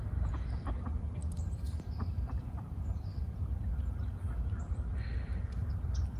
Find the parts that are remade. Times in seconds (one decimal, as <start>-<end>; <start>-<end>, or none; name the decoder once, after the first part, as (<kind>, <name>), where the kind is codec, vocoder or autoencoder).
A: 1.2-4.9 (vocoder, BigVGAN v2)